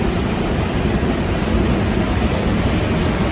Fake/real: real